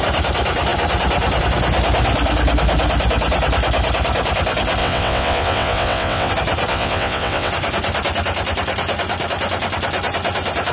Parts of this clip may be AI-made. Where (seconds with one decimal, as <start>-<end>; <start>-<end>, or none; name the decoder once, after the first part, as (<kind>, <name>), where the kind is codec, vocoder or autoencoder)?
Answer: 4.8-6.3 (vocoder, WaveNeXt); 6.7-7.5